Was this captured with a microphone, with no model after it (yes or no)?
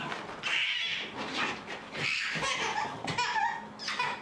yes